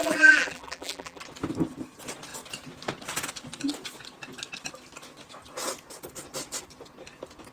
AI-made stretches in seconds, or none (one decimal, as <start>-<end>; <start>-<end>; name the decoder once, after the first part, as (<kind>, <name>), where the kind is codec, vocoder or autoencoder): 0.0-1.2 (vocoder, BigVGAN v2)